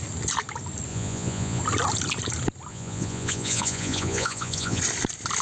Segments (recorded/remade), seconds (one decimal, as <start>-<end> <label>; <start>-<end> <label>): 0.0-0.9 recorded; 0.9-1.6 remade; 1.6-2.7 recorded; 2.7-4.8 remade; 4.8-5.4 recorded